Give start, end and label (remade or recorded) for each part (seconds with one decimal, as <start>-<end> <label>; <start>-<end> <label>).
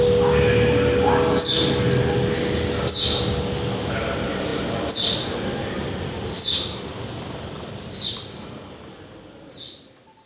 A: 0.0-10.3 recorded